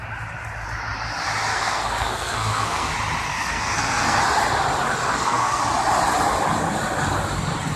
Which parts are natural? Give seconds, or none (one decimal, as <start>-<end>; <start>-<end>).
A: 0.0-1.5; 2.9-3.3; 4.2-5.0; 5.6-7.8